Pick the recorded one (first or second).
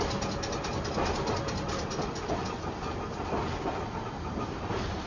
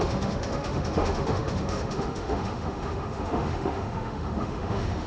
first